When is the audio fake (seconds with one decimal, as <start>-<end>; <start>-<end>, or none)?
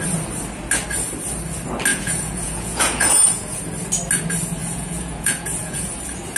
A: 1.9-3.6; 4.6-5.9